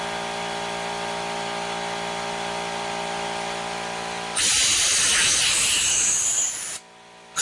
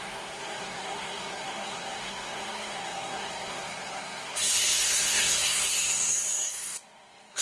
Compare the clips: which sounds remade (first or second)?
second